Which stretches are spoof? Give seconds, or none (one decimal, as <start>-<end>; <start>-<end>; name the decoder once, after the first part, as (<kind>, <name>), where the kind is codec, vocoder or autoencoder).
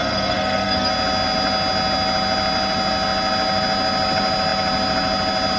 0.0-0.9 (codec, SNAC)